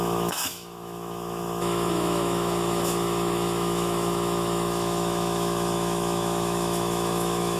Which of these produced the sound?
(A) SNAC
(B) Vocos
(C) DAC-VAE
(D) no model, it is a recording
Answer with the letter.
C